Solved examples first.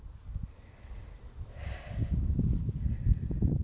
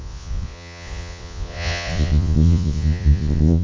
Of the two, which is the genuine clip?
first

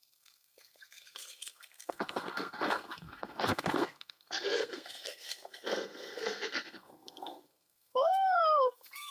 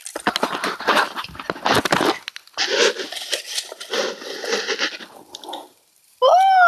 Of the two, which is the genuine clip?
second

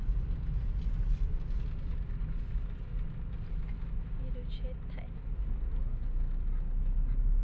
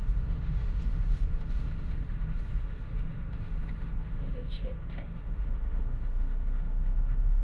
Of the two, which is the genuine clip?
first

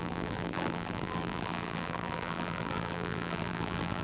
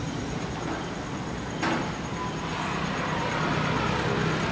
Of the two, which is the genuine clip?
second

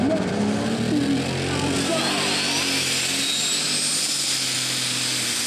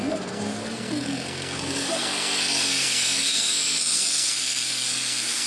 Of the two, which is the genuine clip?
first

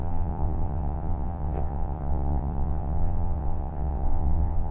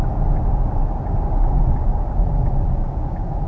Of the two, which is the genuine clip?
second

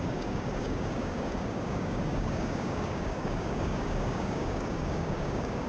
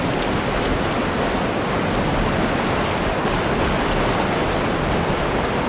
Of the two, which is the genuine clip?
second